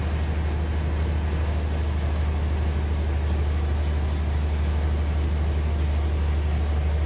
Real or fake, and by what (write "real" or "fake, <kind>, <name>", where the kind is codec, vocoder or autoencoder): real